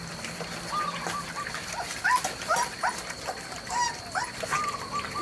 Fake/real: real